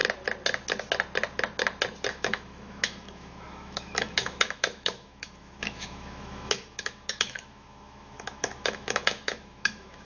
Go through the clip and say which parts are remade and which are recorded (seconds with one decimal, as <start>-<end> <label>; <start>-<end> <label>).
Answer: 0.0-2.1 recorded; 2.1-10.0 remade